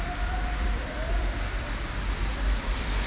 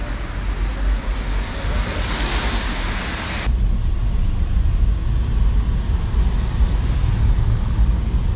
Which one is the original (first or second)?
second